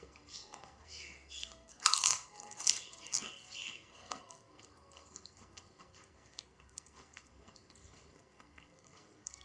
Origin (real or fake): fake